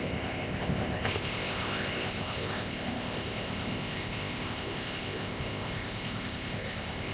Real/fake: fake